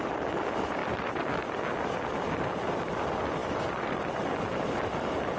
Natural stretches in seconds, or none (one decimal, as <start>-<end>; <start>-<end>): 0.0-5.4